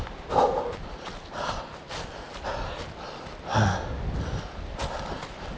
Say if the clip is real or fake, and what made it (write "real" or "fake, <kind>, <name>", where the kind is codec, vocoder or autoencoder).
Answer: real